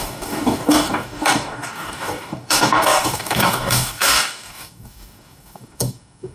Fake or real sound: fake